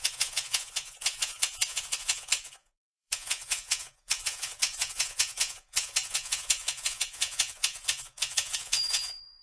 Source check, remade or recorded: remade